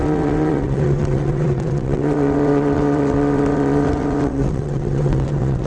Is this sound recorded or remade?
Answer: remade